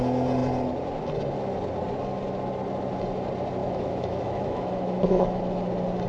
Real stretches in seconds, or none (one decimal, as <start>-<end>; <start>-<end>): 0.0-3.6; 5.4-6.1